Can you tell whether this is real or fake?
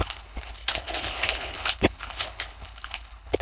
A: fake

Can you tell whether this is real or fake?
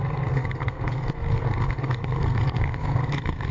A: fake